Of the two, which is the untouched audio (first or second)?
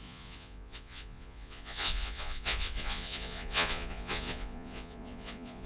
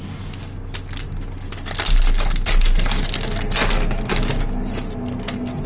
second